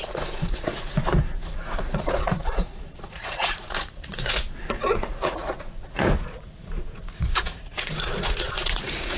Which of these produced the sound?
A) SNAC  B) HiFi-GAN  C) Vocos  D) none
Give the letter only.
C